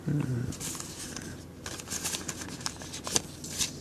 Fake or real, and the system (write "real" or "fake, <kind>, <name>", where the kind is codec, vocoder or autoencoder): real